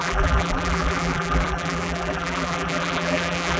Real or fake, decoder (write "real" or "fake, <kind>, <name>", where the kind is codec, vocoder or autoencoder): fake, vocoder, BigVGAN v2